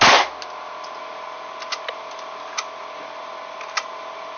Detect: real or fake real